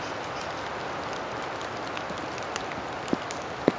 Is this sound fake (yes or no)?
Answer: no